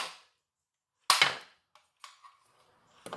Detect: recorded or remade recorded